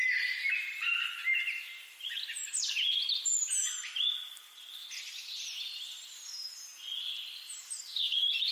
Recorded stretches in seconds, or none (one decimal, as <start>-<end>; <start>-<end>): 1.2-1.7; 6.7-7.2